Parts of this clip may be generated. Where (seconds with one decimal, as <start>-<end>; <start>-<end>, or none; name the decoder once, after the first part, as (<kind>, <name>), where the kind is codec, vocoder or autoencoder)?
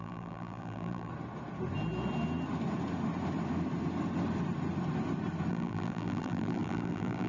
0.0-1.1 (vocoder, BigVGAN v2); 5.5-7.3